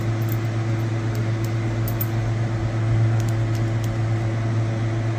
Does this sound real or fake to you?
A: real